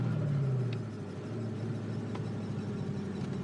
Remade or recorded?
recorded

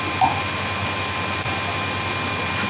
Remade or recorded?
recorded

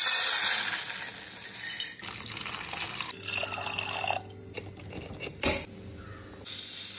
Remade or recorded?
recorded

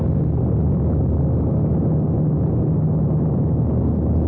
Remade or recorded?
recorded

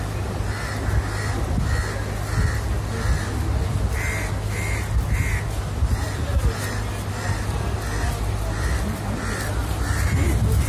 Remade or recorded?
recorded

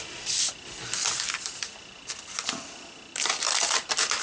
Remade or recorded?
recorded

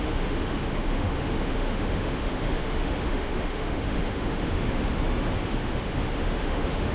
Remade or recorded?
remade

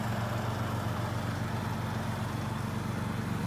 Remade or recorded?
recorded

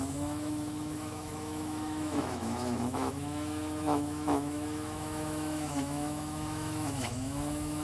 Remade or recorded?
remade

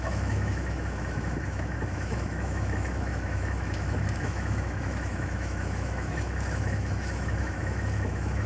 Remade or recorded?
remade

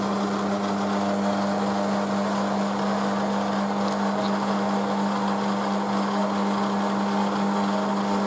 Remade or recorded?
recorded